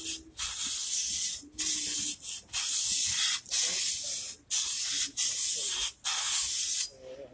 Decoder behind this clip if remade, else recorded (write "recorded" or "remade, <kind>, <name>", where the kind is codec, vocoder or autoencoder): recorded